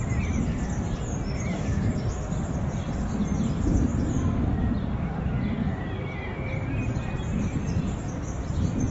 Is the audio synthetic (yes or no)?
yes